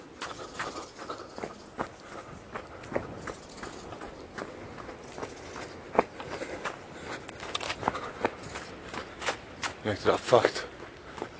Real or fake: real